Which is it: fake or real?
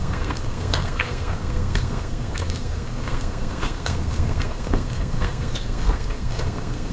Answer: fake